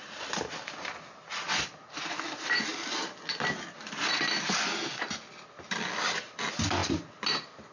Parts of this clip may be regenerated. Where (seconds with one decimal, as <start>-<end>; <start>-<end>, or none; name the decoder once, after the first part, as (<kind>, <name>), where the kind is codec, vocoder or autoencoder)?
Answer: none